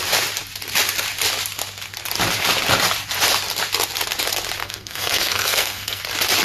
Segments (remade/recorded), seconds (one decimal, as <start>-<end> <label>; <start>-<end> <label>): 0.0-4.6 recorded; 4.6-6.0 remade; 6.0-6.4 recorded